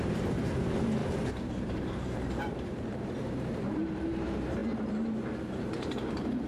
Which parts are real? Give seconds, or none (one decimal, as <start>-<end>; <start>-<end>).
4.6-5.4